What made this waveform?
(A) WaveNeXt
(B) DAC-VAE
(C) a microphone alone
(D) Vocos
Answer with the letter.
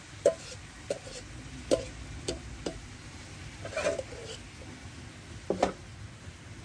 C